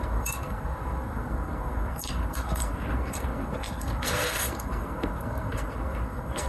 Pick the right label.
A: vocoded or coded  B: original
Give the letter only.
A